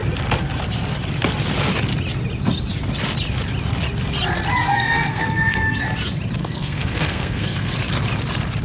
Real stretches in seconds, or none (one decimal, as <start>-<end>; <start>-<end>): 0.0-4.7; 5.8-6.4; 7.7-8.6